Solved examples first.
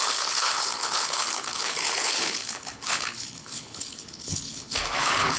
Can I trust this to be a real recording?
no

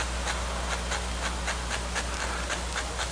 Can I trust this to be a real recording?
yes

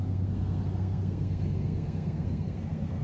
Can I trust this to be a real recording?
no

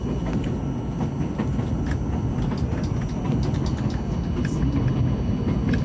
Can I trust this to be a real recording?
yes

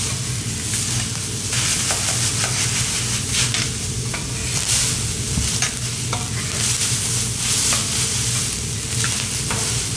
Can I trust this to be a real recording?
yes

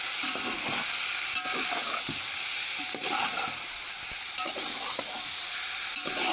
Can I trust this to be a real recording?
yes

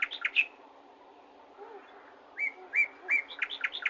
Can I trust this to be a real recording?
yes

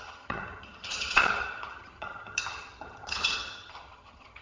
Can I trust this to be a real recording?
no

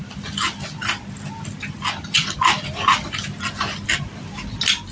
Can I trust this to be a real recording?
yes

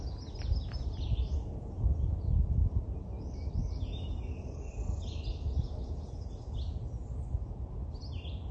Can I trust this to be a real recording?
yes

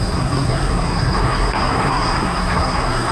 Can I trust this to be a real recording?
no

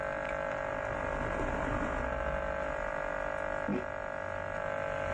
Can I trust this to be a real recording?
yes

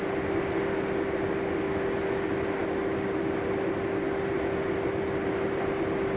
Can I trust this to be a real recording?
yes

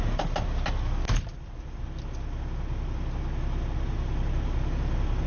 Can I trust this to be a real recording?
yes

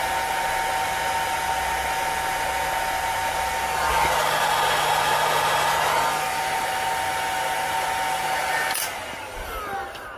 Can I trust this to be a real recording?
yes